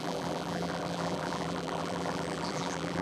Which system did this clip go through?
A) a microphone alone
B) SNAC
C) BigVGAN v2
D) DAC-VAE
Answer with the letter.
C